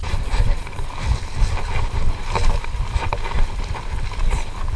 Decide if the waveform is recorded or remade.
recorded